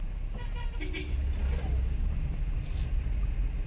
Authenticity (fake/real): real